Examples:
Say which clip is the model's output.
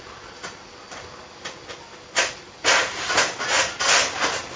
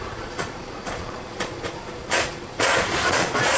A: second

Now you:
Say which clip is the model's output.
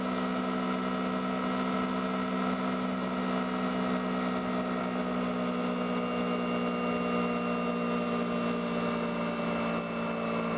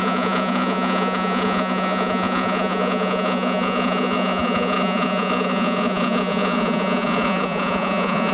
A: second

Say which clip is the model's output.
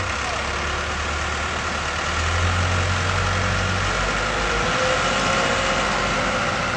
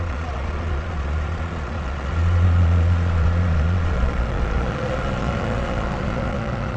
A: second